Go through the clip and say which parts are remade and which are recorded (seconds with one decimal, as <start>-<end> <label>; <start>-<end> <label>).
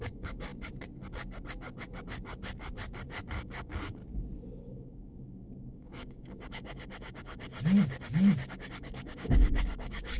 0.0-0.5 remade; 0.5-3.4 recorded; 3.4-4.0 remade; 4.0-4.6 recorded; 4.6-7.5 remade; 7.5-8.5 recorded; 8.5-10.2 remade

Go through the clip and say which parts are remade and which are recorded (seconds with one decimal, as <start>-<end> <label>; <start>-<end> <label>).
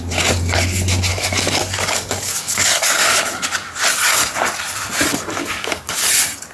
0.0-1.1 recorded; 1.1-3.8 remade; 3.8-5.1 recorded; 5.1-6.0 remade; 6.0-6.5 recorded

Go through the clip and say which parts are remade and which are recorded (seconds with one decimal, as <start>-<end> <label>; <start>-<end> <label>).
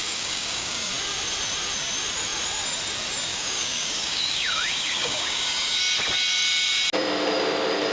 0.0-0.9 remade; 0.9-3.3 recorded; 3.3-5.8 remade; 5.8-7.9 recorded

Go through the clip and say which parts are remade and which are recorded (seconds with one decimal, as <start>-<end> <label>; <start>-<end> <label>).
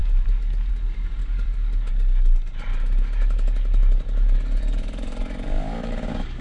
0.0-0.7 remade; 0.7-1.2 recorded; 1.2-1.9 remade; 1.9-2.7 recorded; 2.7-6.4 remade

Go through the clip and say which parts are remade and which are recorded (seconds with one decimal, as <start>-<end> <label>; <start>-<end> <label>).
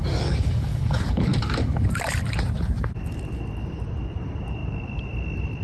0.0-1.9 remade; 1.9-5.6 recorded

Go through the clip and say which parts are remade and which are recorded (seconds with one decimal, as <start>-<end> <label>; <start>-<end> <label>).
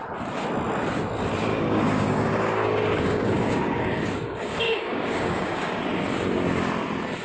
0.0-1.5 recorded; 1.5-5.8 remade; 5.8-7.2 recorded